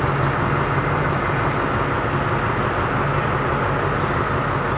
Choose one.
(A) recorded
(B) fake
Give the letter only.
A